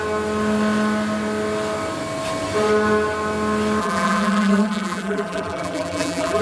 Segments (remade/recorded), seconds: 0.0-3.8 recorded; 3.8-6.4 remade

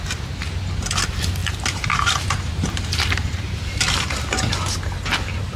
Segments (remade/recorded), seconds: 0.0-1.4 recorded; 1.4-4.2 remade; 4.2-5.6 recorded

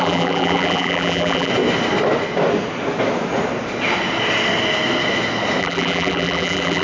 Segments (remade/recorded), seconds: 0.0-1.5 remade; 1.5-5.6 recorded; 5.6-6.8 remade

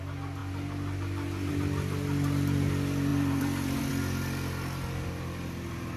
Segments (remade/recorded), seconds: 0.0-3.1 recorded; 3.1-3.9 remade; 3.9-6.0 recorded